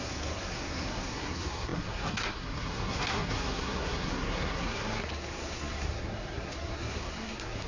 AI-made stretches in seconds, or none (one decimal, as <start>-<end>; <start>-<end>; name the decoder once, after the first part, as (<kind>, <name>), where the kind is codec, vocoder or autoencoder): 0.0-7.7 (codec, SNAC)